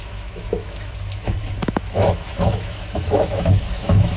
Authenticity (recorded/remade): remade